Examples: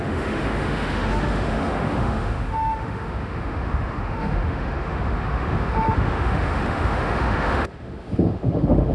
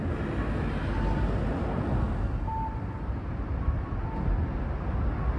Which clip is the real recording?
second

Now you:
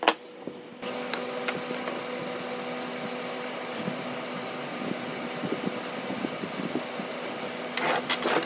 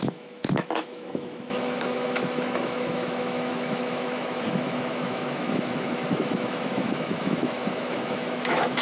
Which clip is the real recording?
first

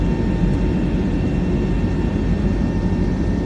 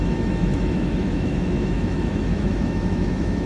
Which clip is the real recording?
first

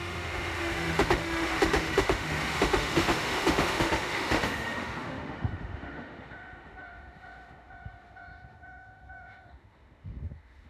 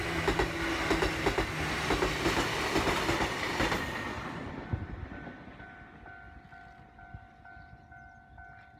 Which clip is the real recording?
second